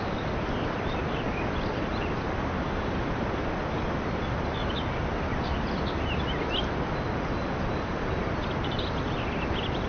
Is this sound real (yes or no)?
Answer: yes